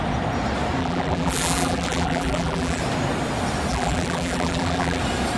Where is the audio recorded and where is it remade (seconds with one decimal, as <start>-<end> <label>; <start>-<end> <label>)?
0.0-0.8 recorded; 0.8-2.8 remade; 2.8-3.7 recorded; 3.7-5.0 remade; 5.0-5.4 recorded